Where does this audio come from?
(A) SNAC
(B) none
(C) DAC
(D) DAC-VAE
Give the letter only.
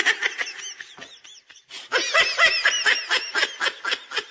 B